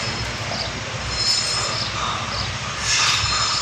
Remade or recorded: recorded